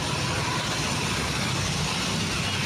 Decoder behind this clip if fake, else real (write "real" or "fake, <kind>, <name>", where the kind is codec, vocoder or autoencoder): real